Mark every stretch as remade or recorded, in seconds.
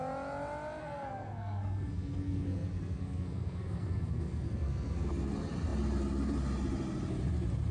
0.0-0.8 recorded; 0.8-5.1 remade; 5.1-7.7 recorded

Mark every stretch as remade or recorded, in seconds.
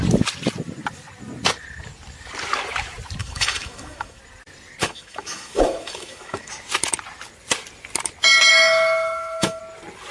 0.0-3.2 recorded; 3.2-4.2 remade; 4.2-4.8 recorded; 4.8-6.5 remade; 6.5-8.5 recorded; 8.5-9.6 remade; 9.6-10.1 recorded